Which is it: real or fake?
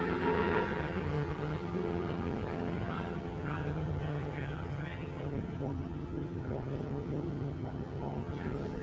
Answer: fake